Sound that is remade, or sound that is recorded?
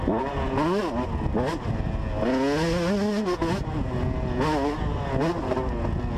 recorded